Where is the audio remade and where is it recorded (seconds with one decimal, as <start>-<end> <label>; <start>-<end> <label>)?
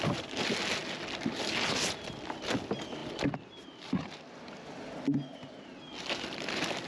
0.0-6.9 recorded